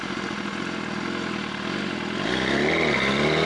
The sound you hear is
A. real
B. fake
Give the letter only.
A